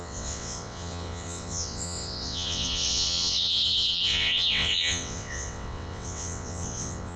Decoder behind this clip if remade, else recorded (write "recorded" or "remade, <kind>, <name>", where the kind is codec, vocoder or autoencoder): remade, vocoder, WaveNeXt